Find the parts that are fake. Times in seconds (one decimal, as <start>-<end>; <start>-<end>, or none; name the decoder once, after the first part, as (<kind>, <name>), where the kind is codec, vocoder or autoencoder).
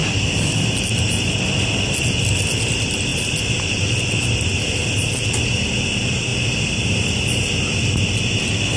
6.3-7.6 (vocoder, BigVGAN v2)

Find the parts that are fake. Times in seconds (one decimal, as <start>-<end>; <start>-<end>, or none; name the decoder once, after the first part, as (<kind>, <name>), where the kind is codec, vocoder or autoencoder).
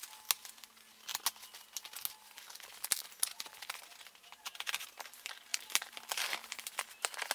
none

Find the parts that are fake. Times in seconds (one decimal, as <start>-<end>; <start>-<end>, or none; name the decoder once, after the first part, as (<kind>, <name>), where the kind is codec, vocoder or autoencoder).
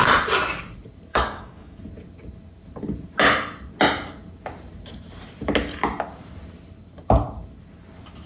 1.1-1.8 (codec, DAC)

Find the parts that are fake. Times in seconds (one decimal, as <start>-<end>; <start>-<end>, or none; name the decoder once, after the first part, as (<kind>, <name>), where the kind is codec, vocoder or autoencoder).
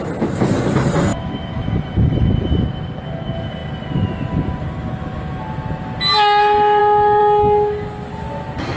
1.1-2.7 (vocoder, BigVGAN v2)